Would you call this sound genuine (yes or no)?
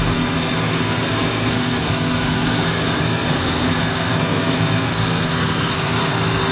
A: no